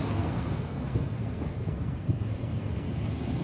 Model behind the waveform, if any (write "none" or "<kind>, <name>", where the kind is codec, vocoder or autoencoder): codec, SNAC